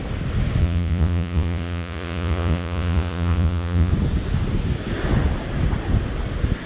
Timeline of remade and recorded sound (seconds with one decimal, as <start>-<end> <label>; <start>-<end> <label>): 0.0-0.6 recorded; 0.6-3.9 remade; 3.9-6.7 recorded